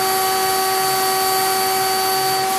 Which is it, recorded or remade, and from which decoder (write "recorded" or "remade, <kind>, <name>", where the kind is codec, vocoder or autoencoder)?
recorded